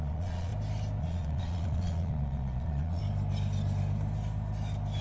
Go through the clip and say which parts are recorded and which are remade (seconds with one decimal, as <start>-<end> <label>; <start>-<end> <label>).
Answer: 0.0-0.5 remade; 0.5-1.0 recorded; 1.0-3.0 remade; 3.0-5.0 recorded